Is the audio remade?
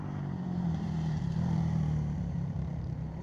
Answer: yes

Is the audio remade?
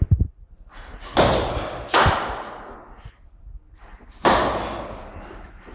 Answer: no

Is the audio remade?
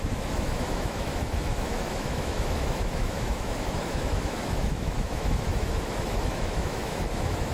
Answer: yes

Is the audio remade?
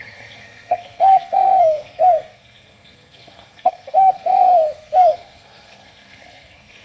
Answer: yes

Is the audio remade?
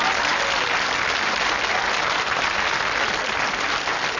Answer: no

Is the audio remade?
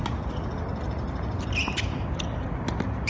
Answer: no